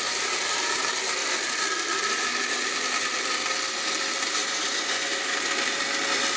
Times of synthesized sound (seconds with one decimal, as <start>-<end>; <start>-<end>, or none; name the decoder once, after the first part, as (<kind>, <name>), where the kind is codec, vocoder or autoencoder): 4.4-5.1 (vocoder, Vocos)